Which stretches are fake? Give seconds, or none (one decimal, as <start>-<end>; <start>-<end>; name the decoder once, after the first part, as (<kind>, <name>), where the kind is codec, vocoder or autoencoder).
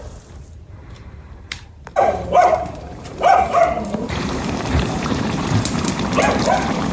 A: 0.0-6.9 (vocoder, BigVGAN v2)